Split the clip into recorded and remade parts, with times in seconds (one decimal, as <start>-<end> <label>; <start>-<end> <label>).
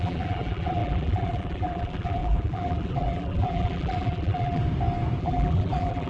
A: 0.0-4.6 remade; 4.6-5.2 recorded; 5.2-6.1 remade